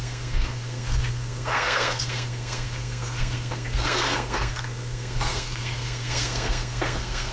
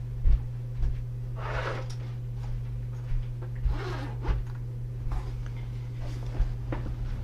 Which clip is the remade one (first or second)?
first